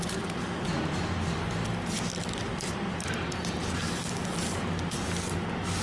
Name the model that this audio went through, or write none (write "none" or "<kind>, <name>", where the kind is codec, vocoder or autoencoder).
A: none